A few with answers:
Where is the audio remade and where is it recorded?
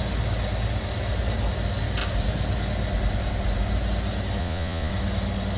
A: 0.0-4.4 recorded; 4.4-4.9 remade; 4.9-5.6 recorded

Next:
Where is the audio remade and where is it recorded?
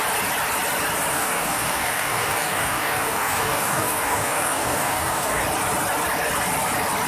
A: 0.0-1.1 recorded; 1.1-5.4 remade; 5.4-7.1 recorded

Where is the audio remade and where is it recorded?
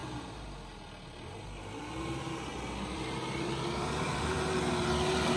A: 0.0-2.5 recorded; 2.5-4.7 remade; 4.7-5.4 recorded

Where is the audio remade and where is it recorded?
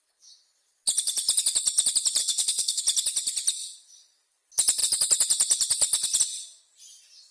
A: 0.0-2.2 recorded; 2.2-2.8 remade; 2.8-7.3 recorded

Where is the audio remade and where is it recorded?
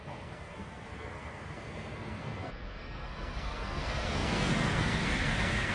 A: 0.0-5.7 remade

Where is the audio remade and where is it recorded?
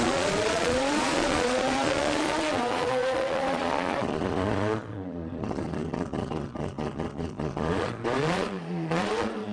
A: 0.0-9.5 remade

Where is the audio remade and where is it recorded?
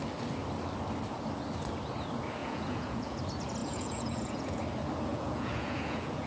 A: 0.0-2.4 recorded; 2.4-3.2 remade; 3.2-3.6 recorded; 3.6-4.6 remade; 4.6-5.1 recorded; 5.1-6.3 remade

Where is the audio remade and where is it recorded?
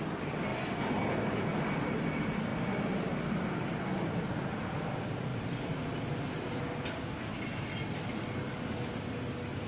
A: 0.0-9.7 recorded